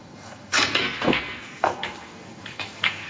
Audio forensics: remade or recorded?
remade